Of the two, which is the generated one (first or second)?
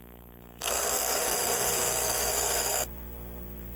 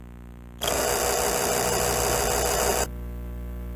first